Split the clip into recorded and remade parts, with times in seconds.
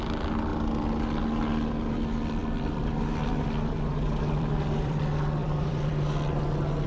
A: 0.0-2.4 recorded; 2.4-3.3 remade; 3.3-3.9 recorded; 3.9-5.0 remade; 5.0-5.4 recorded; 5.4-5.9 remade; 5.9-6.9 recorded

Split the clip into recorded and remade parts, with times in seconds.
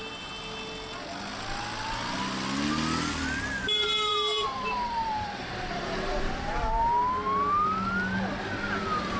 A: 0.0-4.1 recorded; 4.1-6.6 remade; 6.6-9.2 recorded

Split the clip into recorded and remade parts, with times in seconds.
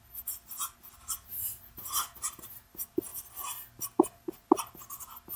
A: 0.0-1.3 recorded; 1.3-2.5 remade; 2.5-5.4 recorded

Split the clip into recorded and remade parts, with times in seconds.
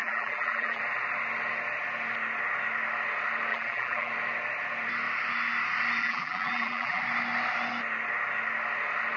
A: 0.0-0.8 remade; 0.8-3.5 recorded; 3.5-4.1 remade; 4.1-6.0 recorded; 6.0-7.0 remade; 7.0-9.2 recorded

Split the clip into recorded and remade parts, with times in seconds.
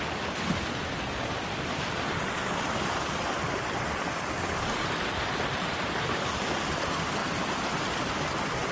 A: 0.0-1.1 recorded; 1.1-3.4 remade; 3.4-8.7 recorded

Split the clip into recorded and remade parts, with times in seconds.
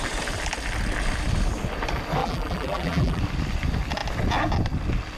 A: 0.0-2.2 recorded; 2.2-3.2 remade; 3.2-5.2 recorded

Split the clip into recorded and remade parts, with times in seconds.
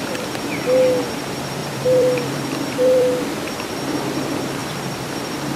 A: 0.0-1.6 recorded; 1.6-3.5 remade; 3.5-4.6 recorded; 4.6-5.6 remade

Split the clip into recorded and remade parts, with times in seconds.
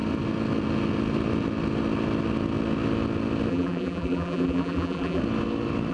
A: 0.0-3.5 recorded; 3.5-5.2 remade; 5.2-5.9 recorded